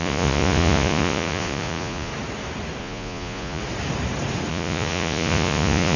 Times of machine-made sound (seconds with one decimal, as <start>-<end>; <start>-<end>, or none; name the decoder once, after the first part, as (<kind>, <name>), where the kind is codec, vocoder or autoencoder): 0.0-2.1 (vocoder, Vocos); 2.8-3.6; 4.5-6.0